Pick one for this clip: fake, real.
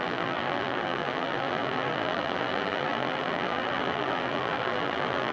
fake